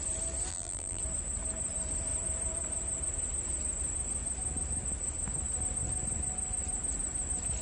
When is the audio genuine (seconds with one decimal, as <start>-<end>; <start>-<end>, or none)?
0.0-0.5; 1.0-7.6